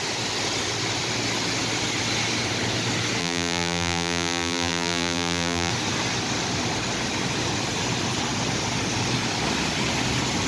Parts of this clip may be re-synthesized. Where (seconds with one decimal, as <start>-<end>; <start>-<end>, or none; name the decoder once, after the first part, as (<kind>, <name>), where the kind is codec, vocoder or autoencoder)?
3.2-5.7 (vocoder, BigVGAN v2)